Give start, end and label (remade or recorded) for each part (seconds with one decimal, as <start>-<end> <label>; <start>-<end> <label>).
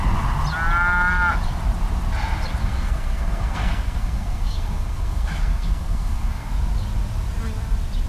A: 0.0-2.6 recorded; 2.6-6.5 remade; 6.5-8.1 recorded